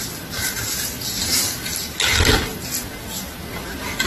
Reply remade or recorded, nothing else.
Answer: recorded